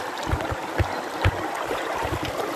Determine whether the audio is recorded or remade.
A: recorded